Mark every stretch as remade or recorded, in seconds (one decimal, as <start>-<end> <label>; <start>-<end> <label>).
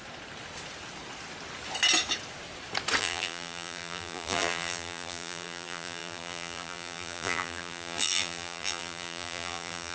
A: 0.0-3.0 recorded; 3.0-9.9 remade